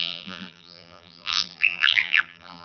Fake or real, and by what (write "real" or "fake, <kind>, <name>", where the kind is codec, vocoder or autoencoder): fake, vocoder, BigVGAN v2